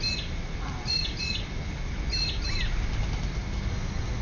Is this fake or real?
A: real